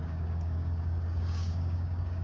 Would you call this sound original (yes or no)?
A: no